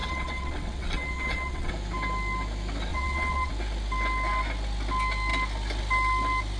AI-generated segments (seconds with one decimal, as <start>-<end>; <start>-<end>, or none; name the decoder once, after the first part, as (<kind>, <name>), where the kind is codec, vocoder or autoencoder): 0.0-1.7 (vocoder, WaveNeXt); 2.9-3.5